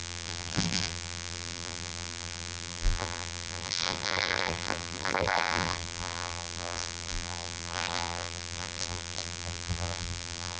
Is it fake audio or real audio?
fake